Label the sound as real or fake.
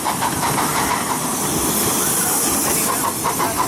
real